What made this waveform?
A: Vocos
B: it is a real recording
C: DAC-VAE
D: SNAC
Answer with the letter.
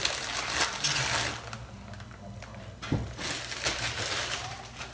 B